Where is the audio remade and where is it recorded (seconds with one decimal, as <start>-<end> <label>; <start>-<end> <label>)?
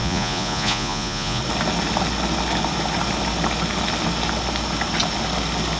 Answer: 0.0-1.4 remade; 1.4-5.8 recorded